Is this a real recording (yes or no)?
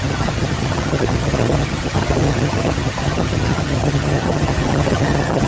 no